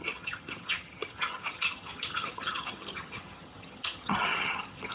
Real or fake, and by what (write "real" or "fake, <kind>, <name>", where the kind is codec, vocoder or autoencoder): fake, vocoder, HiFi-GAN